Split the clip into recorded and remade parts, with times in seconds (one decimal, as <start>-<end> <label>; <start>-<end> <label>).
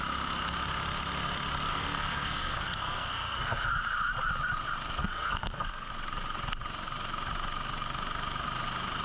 0.0-1.7 recorded; 1.7-3.7 remade; 3.7-5.0 recorded; 5.0-5.9 remade; 5.9-9.0 recorded